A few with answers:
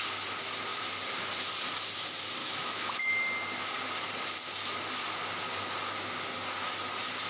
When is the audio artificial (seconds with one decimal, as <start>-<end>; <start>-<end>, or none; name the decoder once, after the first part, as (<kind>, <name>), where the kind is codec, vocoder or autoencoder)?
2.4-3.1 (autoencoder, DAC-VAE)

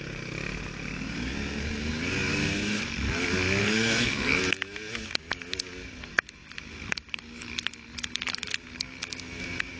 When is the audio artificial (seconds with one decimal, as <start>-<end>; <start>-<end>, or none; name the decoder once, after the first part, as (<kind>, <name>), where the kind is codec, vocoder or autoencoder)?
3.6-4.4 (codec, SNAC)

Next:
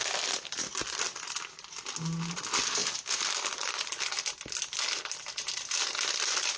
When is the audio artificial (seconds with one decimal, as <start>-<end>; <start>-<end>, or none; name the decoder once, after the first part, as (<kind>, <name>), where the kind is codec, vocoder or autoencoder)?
none

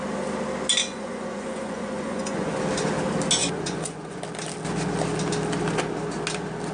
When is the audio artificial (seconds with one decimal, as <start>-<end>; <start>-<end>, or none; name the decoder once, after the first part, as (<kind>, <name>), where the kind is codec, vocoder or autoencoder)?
0.8-2.6 (vocoder, Vocos); 3.4-4.2

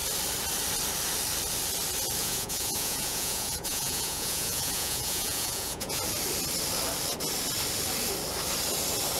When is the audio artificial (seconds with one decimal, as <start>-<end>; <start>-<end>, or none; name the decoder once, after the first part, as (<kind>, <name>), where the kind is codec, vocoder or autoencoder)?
2.2-6.0 (vocoder, Vocos)

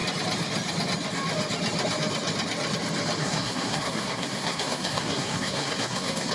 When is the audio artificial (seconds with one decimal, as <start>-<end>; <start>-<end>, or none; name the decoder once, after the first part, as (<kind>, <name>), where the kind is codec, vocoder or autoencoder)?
3.2-6.3 (codec, SNAC)

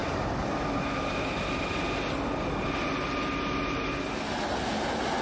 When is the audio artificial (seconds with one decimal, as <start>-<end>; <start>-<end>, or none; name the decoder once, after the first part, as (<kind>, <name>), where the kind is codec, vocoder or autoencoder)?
none

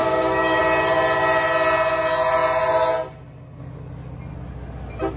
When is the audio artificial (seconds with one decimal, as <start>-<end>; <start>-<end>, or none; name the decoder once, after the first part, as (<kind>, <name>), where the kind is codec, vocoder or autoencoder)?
0.0-0.6 (codec, DAC)